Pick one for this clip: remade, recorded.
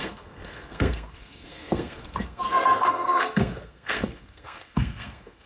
remade